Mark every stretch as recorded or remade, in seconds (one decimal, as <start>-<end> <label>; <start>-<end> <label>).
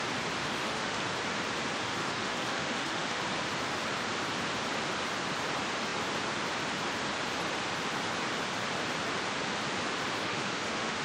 0.0-0.4 recorded; 0.4-1.0 remade; 1.0-2.0 recorded; 2.0-3.2 remade; 3.2-10.2 recorded; 10.2-11.0 remade